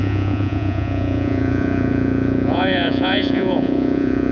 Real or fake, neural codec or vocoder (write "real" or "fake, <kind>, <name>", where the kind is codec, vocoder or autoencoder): fake, vocoder, Vocos